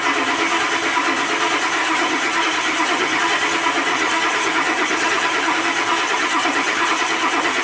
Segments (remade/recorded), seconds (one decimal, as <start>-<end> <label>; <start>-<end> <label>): 0.0-1.8 recorded; 1.8-3.2 remade; 3.2-3.9 recorded; 3.9-5.6 remade; 5.6-6.0 recorded; 6.0-7.6 remade